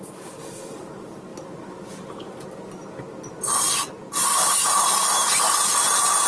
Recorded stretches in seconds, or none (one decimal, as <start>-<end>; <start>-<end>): 0.0-6.3

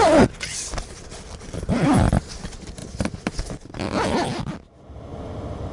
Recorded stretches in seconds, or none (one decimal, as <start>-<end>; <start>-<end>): 0.0-5.7

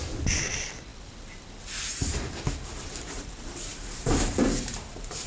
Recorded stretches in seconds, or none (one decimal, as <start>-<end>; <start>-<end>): 0.0-2.7

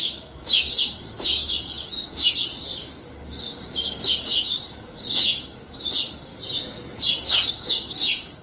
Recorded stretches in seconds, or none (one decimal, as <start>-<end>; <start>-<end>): 2.5-3.4; 6.3-7.5

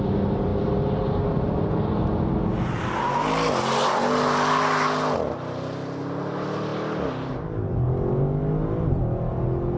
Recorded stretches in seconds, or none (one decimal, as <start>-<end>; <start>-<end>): 0.0-9.8

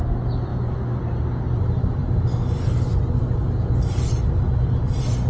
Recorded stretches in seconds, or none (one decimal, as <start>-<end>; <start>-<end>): 0.0-0.5; 1.0-5.3

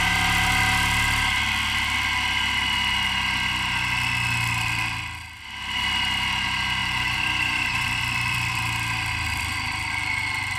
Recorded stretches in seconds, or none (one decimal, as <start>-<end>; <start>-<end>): 0.0-6.8